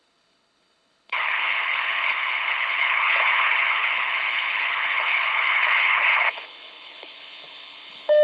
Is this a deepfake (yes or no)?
yes